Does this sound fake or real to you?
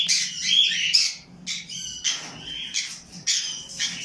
real